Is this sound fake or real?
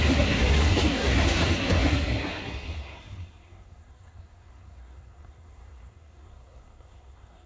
fake